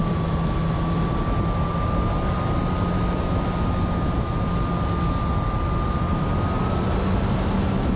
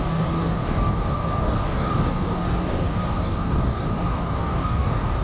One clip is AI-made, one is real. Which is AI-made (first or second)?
second